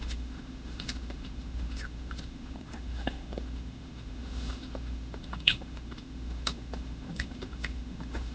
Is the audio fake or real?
fake